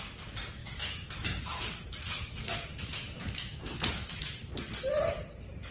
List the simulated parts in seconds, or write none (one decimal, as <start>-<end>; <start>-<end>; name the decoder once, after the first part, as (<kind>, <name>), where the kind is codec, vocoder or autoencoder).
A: 0.6-1.6 (autoencoder, DAC-VAE); 2.0-4.1